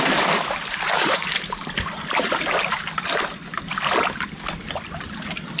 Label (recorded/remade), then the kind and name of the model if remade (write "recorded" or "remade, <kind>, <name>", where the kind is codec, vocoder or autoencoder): recorded